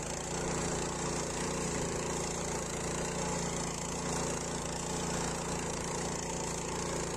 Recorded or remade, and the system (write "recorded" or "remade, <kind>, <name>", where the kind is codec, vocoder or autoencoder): recorded